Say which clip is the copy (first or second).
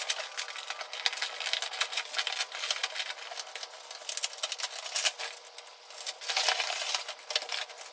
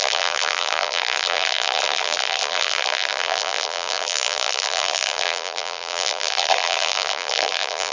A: second